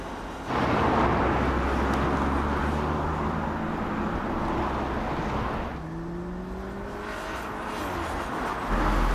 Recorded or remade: recorded